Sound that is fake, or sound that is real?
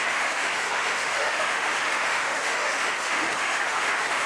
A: fake